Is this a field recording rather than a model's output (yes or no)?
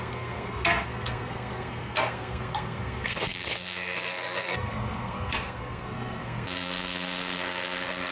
no